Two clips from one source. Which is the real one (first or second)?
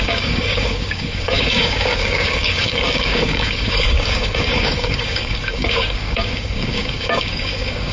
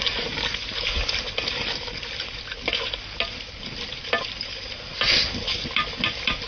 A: second